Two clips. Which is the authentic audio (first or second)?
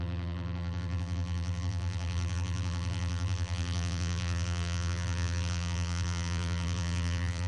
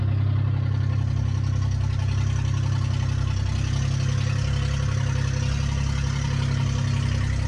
second